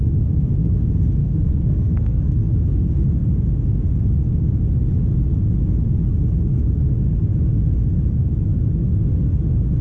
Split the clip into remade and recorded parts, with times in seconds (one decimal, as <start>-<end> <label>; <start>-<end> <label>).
0.0-1.2 recorded; 1.2-2.5 remade; 2.5-9.8 recorded